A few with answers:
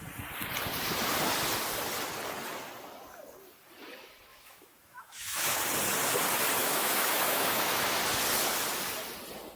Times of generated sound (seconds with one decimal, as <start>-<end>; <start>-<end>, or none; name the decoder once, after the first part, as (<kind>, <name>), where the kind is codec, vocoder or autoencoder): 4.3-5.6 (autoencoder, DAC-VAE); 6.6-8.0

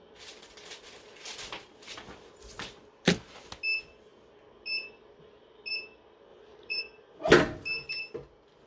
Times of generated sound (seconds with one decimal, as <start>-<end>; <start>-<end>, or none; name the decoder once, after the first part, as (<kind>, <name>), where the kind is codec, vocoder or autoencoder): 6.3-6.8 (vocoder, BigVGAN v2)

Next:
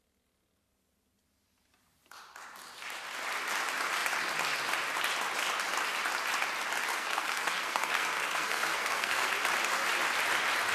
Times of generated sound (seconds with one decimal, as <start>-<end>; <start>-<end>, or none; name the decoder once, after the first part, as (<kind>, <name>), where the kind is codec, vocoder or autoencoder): 6.9-9.3 (codec, SNAC)

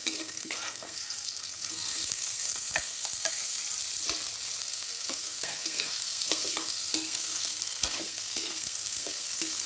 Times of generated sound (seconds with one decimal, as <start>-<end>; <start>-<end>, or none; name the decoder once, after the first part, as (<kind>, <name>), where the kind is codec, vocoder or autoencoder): 0.0-3.6 (codec, SNAC); 4.6-9.7

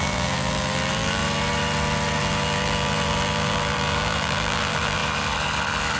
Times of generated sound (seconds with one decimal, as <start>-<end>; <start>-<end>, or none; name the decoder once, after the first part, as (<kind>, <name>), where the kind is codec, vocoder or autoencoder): 0.0-1.2 (vocoder, BigVGAN v2); 2.2-5.0

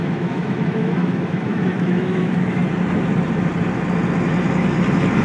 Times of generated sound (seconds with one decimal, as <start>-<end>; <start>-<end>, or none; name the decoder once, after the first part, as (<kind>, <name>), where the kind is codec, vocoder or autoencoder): 0.0-2.6 (autoencoder, DAC-VAE)

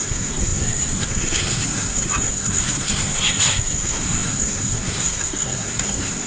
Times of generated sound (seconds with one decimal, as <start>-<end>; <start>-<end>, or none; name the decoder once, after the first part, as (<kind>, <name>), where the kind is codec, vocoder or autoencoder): 0.0-6.3 (codec, SNAC)